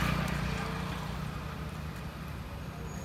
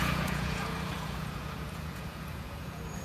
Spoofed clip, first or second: second